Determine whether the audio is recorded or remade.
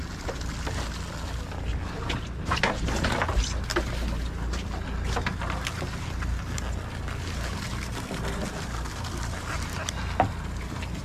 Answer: recorded